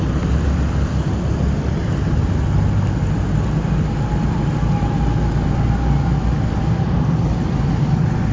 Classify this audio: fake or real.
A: real